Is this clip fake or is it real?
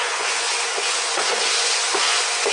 fake